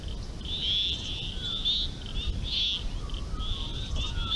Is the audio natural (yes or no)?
yes